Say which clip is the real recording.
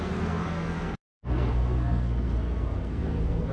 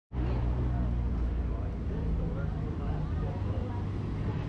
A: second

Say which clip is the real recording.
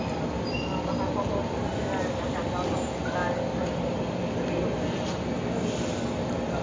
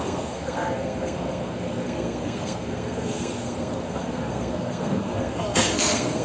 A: first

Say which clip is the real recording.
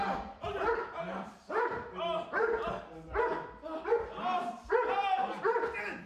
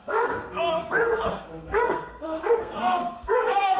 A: first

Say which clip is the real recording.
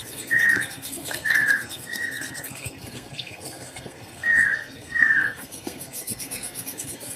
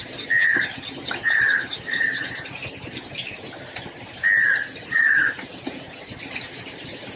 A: second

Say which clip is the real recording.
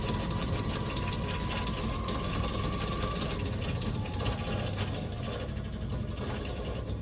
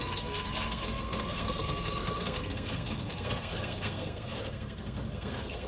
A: first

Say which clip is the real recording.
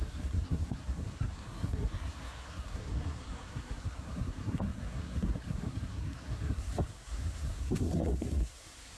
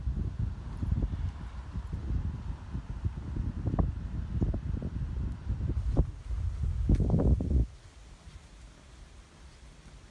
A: second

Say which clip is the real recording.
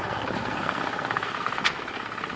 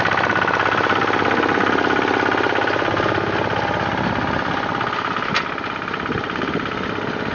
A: second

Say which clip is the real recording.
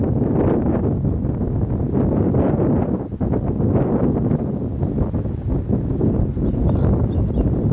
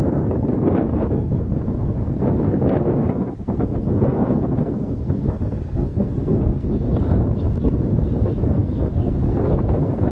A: first